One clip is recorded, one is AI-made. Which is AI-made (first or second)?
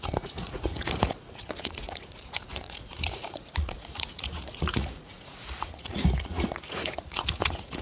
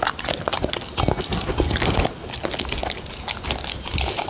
first